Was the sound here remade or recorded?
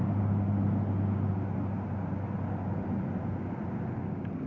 recorded